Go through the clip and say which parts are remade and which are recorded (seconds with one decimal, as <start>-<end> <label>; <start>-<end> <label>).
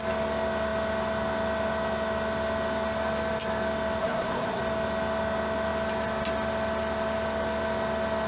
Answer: 0.0-4.0 recorded; 4.0-4.6 remade; 4.6-8.3 recorded